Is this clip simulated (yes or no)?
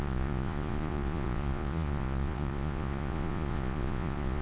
yes